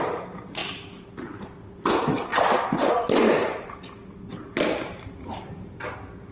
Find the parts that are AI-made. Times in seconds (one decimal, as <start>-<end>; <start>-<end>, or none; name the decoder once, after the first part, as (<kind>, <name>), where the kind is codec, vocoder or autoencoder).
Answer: none